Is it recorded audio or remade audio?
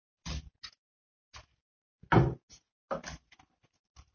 recorded